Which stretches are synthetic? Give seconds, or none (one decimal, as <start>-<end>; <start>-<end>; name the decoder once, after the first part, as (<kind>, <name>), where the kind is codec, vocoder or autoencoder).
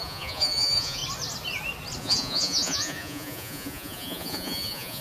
0.0-1.0 (vocoder, Vocos); 2.0-5.0